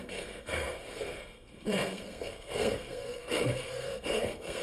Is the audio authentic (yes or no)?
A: no